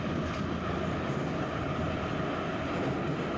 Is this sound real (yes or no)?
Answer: yes